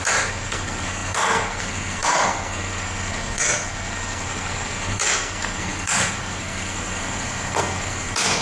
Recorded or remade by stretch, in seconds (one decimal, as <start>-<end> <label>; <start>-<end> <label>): 0.0-8.4 remade